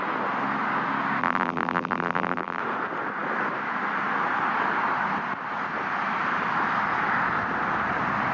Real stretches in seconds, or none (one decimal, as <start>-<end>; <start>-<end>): 0.0-1.2; 2.6-8.3